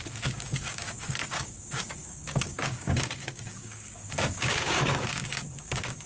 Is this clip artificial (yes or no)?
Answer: yes